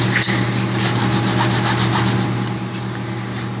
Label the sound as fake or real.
real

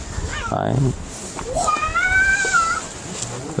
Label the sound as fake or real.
real